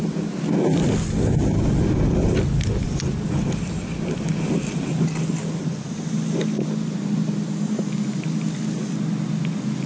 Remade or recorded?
recorded